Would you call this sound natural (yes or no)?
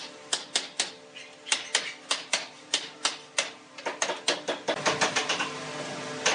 yes